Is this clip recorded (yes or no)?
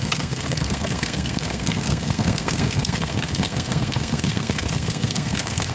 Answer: no